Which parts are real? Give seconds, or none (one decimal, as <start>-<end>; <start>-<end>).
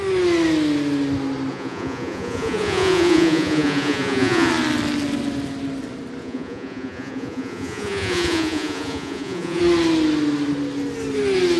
0.0-1.5; 4.5-6.2; 9.6-11.6